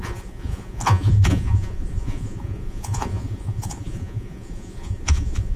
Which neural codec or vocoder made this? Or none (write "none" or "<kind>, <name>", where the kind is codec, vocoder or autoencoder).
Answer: vocoder, Vocos